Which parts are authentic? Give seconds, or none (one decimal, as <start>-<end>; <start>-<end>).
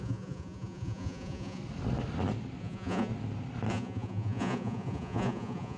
1.6-2.6; 3.1-3.7